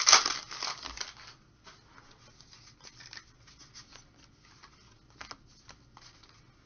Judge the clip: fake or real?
real